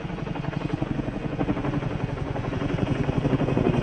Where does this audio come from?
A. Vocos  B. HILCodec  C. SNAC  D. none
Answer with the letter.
A